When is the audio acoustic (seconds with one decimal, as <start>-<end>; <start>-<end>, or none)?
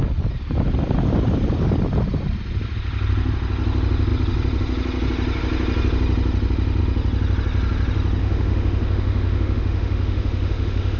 0.0-8.2